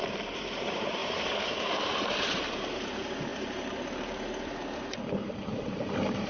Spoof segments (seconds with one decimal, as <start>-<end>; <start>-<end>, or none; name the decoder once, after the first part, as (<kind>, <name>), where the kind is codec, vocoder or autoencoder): 0.0-6.3 (vocoder, BigVGAN v2)